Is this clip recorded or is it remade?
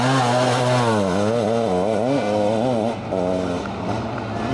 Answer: remade